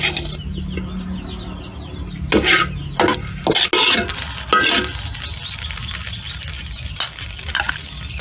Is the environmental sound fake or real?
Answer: real